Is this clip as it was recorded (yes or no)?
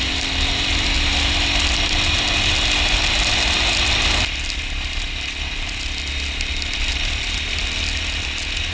yes